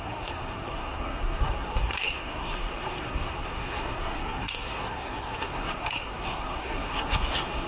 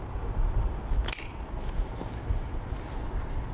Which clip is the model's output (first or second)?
first